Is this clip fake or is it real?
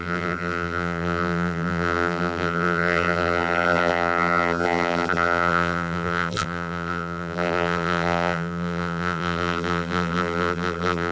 fake